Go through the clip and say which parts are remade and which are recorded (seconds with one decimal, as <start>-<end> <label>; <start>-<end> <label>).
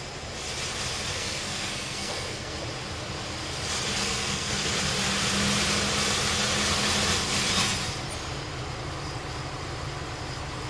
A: 0.0-1.1 recorded; 1.1-2.6 remade; 2.6-4.0 recorded; 4.0-4.8 remade; 4.8-10.7 recorded